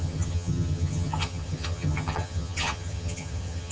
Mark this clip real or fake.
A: fake